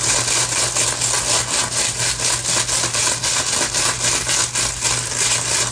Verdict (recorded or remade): recorded